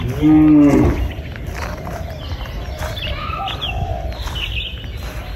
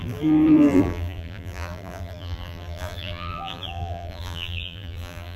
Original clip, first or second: first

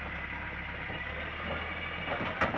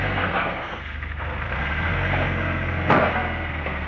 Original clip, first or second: first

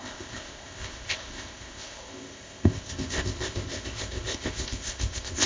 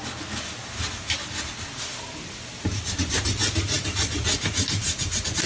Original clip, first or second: second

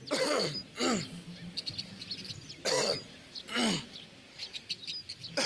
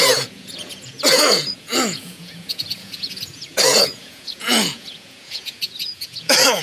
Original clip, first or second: first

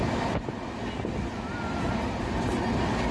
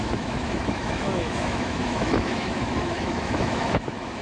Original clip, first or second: first